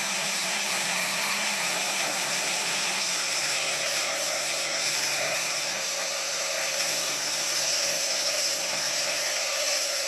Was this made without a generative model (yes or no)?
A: no